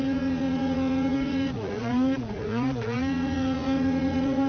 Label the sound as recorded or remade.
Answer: remade